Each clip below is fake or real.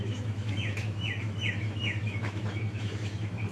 fake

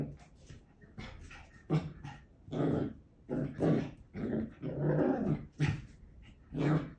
real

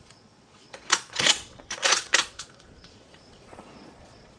fake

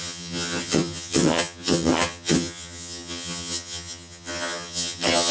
fake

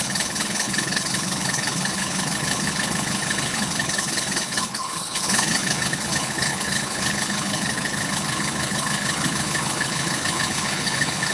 fake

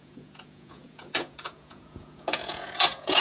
fake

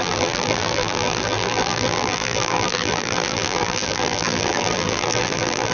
fake